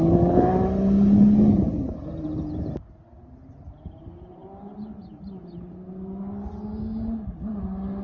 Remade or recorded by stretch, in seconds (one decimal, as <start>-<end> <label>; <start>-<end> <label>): 0.0-8.0 recorded